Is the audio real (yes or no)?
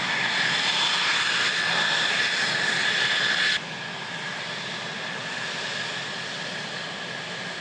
yes